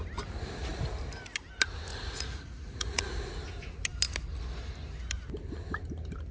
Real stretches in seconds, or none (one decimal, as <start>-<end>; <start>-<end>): 0.0-1.9; 3.3-6.3